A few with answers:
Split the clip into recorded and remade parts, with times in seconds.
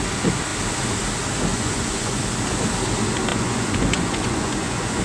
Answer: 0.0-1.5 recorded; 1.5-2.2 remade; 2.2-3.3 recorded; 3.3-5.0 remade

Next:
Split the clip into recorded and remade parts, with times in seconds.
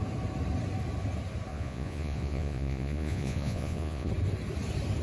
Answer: 0.0-1.5 recorded; 1.5-4.1 remade; 4.1-5.0 recorded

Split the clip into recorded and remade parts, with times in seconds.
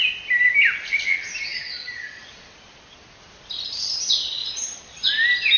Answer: 0.0-1.5 recorded; 1.5-2.2 remade; 2.2-4.4 recorded; 4.4-5.1 remade; 5.1-5.6 recorded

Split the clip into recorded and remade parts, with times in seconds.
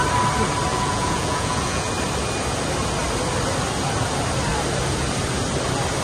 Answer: 0.0-0.7 recorded; 0.7-1.9 remade; 1.9-6.0 recorded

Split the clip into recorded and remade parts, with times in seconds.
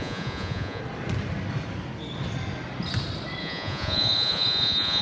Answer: 0.0-0.8 remade; 0.8-3.4 recorded; 3.4-5.0 remade